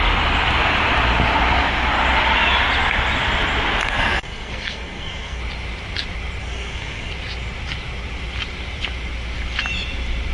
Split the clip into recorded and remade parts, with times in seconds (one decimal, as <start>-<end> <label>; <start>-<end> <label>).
0.0-3.8 recorded; 3.8-5.4 remade; 5.4-6.4 recorded; 6.4-7.1 remade; 7.1-10.3 recorded